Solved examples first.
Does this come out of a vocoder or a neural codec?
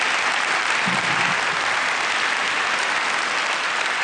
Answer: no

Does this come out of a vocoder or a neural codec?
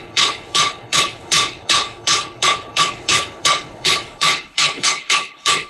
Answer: yes